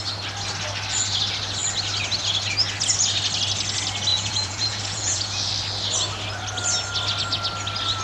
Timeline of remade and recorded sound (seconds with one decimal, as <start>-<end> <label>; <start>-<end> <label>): 0.0-4.1 recorded; 4.1-5.5 remade; 5.5-8.0 recorded